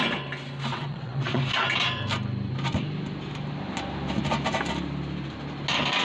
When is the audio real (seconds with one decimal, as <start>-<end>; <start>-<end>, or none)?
0.0-0.7; 1.4-6.0